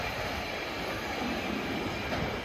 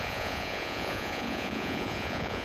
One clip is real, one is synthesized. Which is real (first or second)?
first